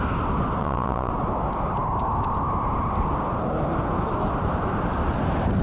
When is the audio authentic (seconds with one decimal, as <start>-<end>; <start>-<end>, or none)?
0.0-0.6; 1.1-5.6